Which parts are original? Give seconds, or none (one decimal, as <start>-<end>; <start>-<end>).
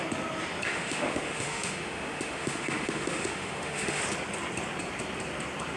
0.0-0.7; 4.0-5.8